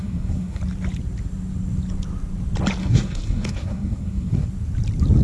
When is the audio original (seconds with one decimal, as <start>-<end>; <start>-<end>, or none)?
0.6-2.8; 4.5-5.2